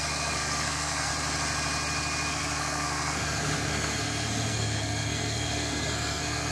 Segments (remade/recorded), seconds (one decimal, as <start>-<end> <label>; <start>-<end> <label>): 0.0-1.1 remade; 1.1-2.3 recorded; 2.3-6.5 remade